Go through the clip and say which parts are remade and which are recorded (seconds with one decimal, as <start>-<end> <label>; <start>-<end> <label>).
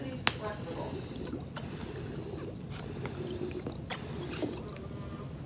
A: 0.0-5.5 recorded